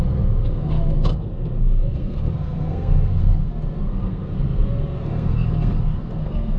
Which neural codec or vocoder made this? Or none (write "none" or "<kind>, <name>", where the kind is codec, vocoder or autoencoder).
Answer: codec, SNAC